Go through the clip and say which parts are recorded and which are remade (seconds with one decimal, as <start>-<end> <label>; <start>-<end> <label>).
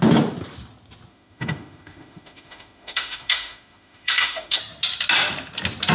0.0-1.1 recorded; 1.1-4.6 remade; 4.6-5.9 recorded